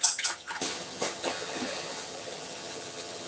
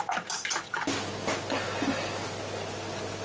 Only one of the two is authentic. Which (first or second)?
second